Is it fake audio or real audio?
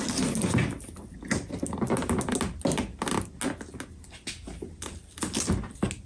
real